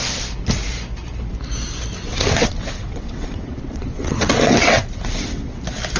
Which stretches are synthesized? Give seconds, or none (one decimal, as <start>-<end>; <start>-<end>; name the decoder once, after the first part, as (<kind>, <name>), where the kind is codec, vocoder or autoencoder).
2.0-5.6 (vocoder, WaveNeXt)